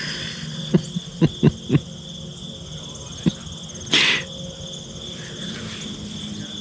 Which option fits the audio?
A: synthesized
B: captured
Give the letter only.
B